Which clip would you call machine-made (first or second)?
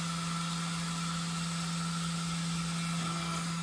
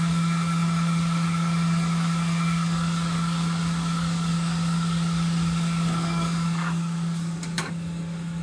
second